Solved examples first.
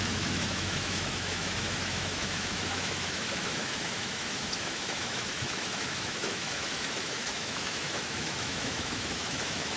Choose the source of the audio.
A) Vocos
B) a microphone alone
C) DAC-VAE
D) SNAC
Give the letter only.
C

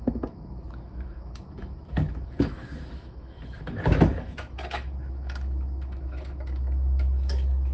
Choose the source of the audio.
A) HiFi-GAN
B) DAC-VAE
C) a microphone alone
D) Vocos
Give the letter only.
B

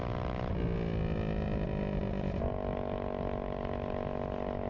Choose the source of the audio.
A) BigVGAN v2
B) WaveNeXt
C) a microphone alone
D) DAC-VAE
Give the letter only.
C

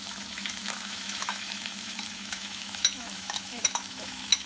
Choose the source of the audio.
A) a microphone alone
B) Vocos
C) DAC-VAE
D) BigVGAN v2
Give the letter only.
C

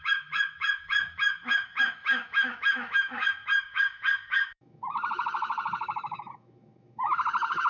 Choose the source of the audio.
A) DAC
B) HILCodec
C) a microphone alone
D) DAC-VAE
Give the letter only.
D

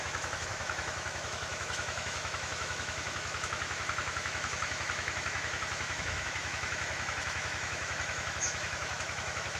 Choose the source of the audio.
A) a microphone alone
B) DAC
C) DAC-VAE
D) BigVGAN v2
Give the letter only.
C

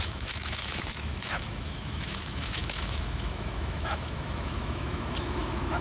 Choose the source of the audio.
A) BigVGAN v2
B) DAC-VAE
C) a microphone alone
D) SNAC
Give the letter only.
B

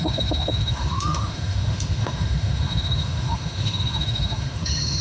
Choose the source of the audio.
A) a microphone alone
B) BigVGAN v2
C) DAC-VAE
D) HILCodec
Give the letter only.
C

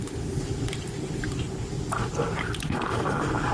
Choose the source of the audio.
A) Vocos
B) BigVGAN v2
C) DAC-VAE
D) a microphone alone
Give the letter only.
D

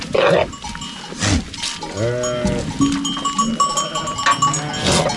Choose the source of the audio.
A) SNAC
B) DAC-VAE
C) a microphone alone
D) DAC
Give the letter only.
C